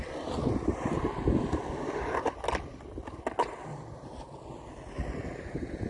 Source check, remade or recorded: recorded